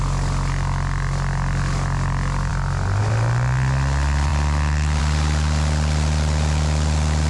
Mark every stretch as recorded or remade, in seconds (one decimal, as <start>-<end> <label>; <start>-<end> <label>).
0.0-7.3 recorded